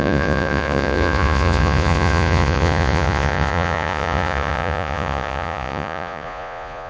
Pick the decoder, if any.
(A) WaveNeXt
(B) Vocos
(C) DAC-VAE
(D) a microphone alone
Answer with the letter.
B